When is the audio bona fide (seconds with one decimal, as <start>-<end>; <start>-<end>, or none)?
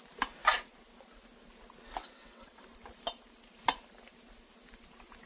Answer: 0.0-2.0; 2.6-5.3